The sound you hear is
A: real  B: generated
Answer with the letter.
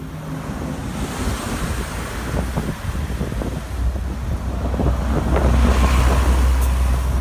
A